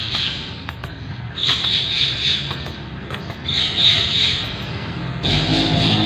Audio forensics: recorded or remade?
remade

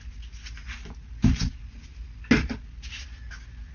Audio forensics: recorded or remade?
recorded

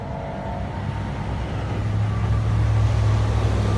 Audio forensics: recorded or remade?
recorded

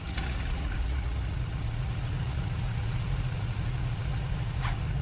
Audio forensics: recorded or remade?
remade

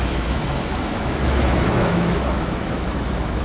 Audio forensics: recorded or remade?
remade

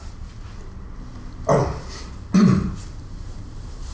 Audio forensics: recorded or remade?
recorded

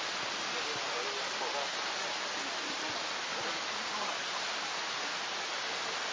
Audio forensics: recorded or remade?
recorded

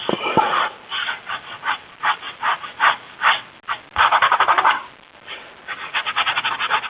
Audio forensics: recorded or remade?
recorded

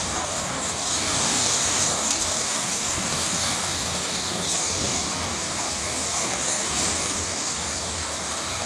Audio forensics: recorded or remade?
remade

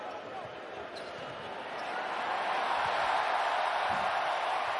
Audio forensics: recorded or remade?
remade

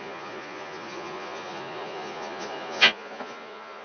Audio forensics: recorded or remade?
remade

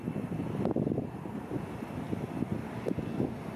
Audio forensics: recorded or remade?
recorded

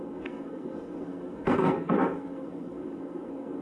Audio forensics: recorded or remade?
remade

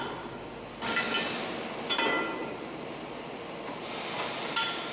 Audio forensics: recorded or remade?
recorded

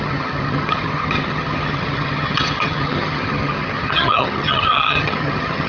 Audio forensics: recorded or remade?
remade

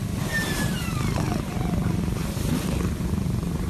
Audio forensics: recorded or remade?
recorded